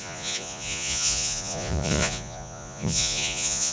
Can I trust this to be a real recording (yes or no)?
no